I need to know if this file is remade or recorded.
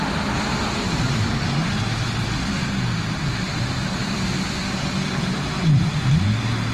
recorded